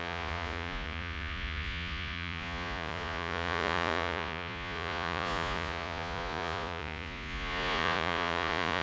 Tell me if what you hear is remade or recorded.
remade